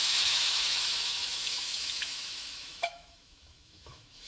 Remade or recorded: remade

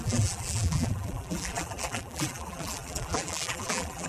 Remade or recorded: remade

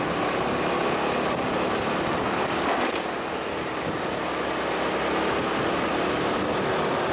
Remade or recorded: recorded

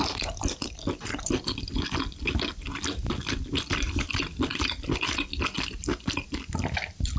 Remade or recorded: recorded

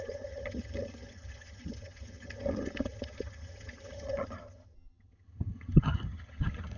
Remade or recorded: remade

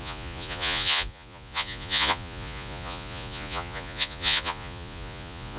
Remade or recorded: remade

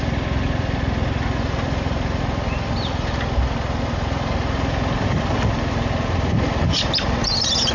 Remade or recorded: recorded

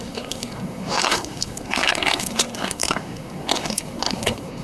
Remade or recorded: remade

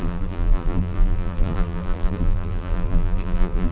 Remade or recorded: remade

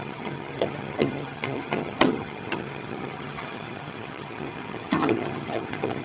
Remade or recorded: remade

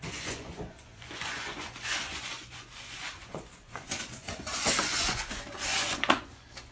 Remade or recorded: remade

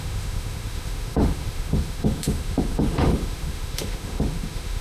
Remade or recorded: remade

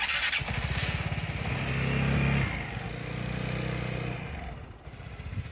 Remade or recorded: recorded